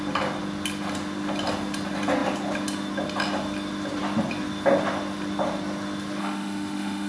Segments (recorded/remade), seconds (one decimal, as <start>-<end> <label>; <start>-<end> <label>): 0.0-6.2 recorded; 6.2-7.1 remade